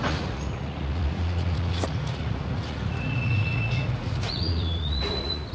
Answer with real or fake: fake